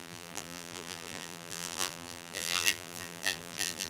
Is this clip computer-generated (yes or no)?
yes